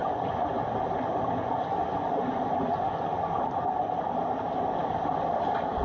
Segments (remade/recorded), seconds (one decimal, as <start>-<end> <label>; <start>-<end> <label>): 0.0-0.5 remade; 0.5-1.4 recorded; 1.4-3.3 remade; 3.3-5.8 recorded